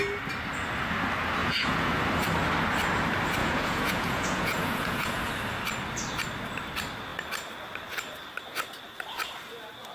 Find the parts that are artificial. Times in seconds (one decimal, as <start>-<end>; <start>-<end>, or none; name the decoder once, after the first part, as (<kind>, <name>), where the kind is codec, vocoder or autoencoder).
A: 1.4-2.0 (vocoder, Vocos); 3.4-5.3